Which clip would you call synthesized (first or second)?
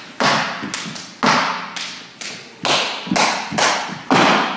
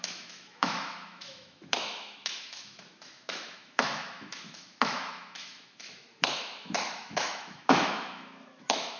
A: second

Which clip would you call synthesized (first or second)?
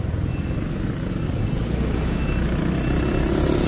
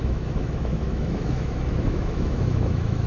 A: second